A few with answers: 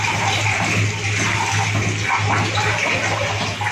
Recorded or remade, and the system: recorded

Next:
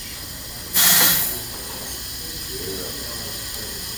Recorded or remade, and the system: recorded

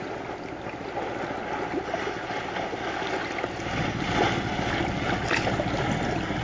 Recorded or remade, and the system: recorded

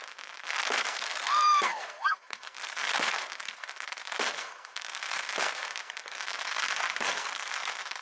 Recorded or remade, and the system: remade, codec, SNAC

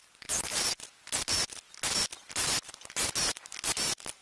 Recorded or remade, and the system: recorded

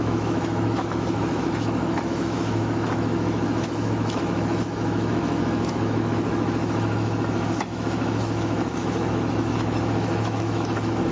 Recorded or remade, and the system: remade, autoencoder, DAC-VAE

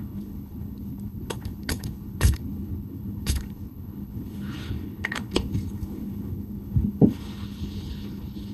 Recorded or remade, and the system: remade, codec, HILCodec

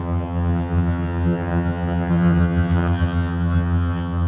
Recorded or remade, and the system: remade, vocoder, HiFi-GAN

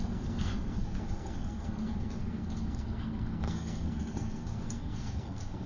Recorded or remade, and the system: remade, codec, SNAC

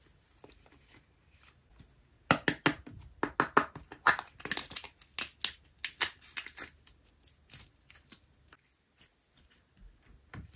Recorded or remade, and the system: recorded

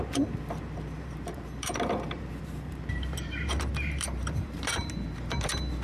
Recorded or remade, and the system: remade, vocoder, BigVGAN v2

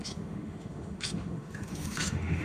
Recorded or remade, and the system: remade, autoencoder, DAC-VAE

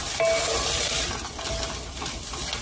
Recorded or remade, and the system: recorded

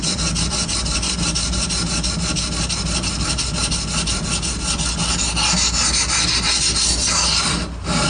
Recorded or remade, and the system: recorded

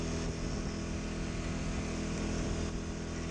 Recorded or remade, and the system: recorded